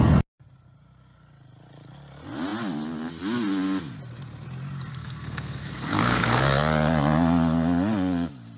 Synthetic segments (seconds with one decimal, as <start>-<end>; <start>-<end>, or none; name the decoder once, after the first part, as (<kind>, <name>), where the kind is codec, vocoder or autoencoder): 4.9-6.4 (codec, SNAC)